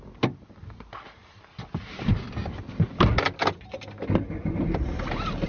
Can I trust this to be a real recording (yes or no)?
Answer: yes